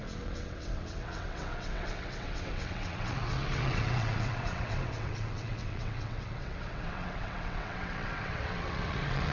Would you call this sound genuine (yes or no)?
no